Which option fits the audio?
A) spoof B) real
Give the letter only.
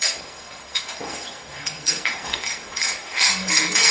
A